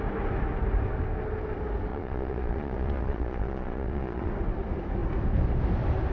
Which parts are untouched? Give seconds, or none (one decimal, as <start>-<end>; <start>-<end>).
0.0-1.9; 4.3-6.1